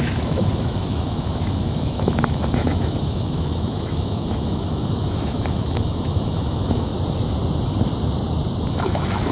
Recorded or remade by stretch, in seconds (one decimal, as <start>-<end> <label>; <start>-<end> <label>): 0.0-6.9 remade; 6.9-8.7 recorded; 8.7-9.3 remade